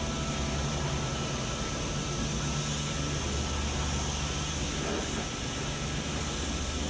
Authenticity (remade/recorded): recorded